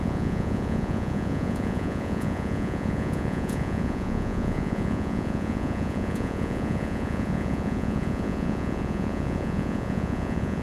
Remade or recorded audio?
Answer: remade